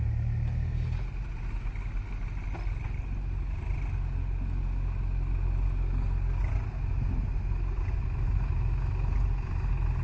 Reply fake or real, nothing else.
real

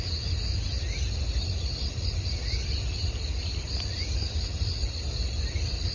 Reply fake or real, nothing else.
real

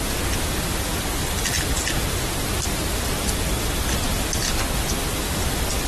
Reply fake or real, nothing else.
real